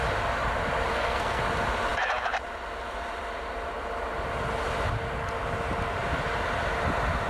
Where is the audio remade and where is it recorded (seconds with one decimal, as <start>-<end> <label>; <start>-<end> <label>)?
0.0-0.9 recorded; 0.9-1.4 remade; 1.4-7.3 recorded